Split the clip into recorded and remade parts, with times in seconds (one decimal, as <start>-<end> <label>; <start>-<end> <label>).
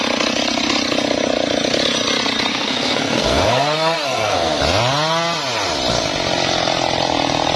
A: 0.0-2.5 recorded; 2.5-4.6 remade; 4.6-7.6 recorded